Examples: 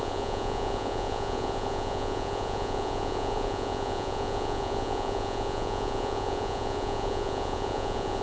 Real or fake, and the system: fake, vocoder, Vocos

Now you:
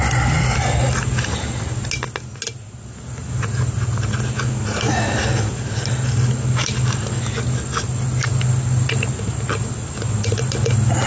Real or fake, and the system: real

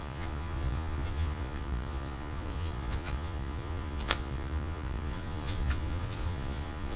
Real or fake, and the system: fake, vocoder, Vocos